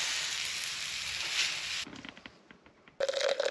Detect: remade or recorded recorded